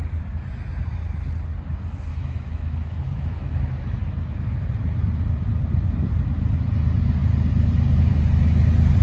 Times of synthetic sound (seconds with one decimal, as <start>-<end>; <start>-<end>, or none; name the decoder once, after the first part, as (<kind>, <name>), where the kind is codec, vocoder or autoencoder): 2.1-4.0 (autoencoder, DAC-VAE)